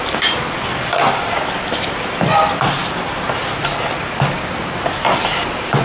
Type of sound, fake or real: real